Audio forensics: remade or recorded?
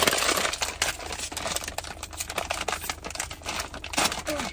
recorded